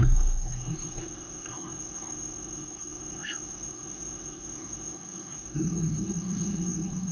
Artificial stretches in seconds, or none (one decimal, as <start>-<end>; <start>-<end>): 0.0-7.1